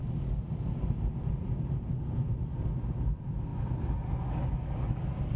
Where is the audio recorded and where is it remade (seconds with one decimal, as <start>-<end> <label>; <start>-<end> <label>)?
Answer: 0.0-1.4 recorded; 1.4-3.5 remade; 3.5-5.4 recorded